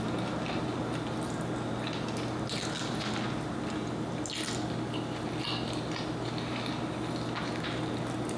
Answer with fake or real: real